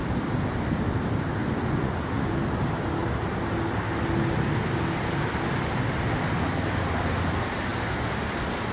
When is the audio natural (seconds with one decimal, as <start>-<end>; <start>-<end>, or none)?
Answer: 0.0-1.4; 2.3-8.7